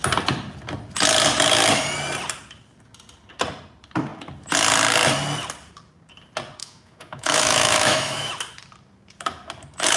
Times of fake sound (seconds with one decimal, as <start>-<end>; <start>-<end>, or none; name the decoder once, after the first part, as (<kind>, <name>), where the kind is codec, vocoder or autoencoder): 6.6-8.3 (autoencoder, DAC-VAE)